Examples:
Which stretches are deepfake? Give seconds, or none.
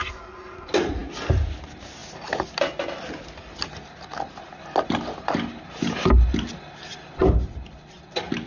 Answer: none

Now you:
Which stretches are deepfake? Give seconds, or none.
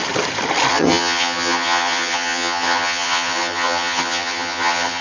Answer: 0.7-5.0 (vocoder, HiFi-GAN)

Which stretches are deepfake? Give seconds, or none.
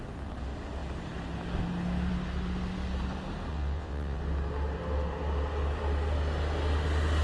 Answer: 3.5-4.2 (vocoder, WaveNeXt)